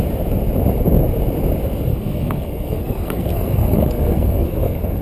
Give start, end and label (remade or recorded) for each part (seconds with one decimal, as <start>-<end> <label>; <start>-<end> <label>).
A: 0.0-1.9 recorded; 1.9-5.0 remade